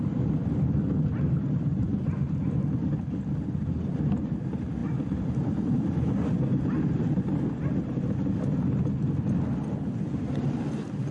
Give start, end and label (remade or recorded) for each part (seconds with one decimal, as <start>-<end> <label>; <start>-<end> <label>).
0.0-4.8 recorded; 4.8-7.5 remade; 7.5-11.1 recorded